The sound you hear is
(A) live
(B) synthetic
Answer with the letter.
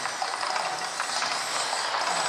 A